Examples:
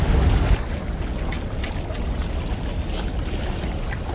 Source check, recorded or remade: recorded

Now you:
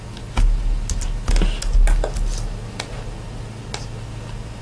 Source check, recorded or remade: recorded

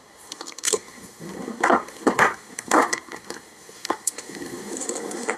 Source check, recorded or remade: remade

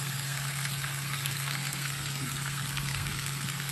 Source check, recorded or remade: remade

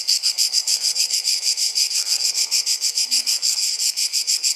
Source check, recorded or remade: remade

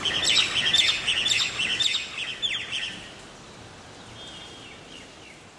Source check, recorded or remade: recorded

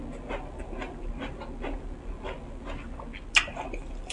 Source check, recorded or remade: recorded